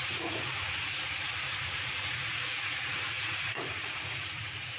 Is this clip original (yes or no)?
no